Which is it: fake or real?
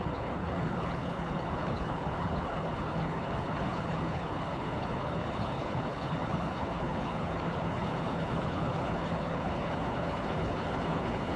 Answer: fake